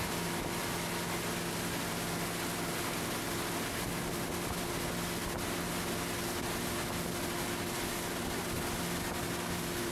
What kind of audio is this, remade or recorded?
recorded